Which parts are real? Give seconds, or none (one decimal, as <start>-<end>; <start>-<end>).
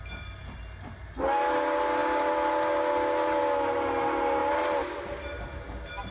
0.0-6.1